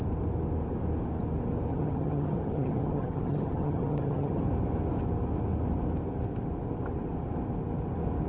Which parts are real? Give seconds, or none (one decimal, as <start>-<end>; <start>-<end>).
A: 0.0-1.7; 4.4-8.3